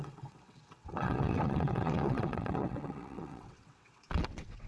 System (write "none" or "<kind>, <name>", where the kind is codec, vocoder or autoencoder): vocoder, WaveNeXt